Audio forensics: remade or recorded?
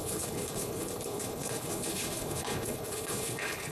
remade